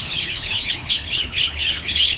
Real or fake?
fake